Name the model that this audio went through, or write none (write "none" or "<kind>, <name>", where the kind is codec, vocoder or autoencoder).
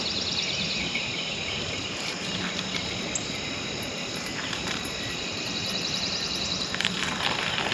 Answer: vocoder, BigVGAN v2